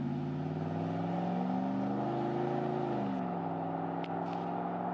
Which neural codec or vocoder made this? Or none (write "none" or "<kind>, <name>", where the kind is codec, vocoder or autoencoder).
none